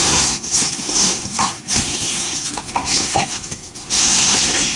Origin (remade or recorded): remade